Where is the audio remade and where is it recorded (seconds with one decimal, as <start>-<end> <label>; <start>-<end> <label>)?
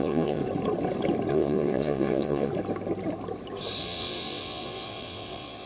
0.0-0.4 remade; 0.4-1.3 recorded; 1.3-2.5 remade; 2.5-3.8 recorded; 3.8-5.7 remade